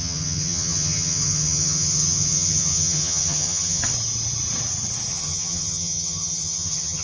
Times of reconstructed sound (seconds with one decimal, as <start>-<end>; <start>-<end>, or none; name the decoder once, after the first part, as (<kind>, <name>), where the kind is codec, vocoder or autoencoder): 0.0-3.8 (vocoder, HiFi-GAN); 5.1-7.0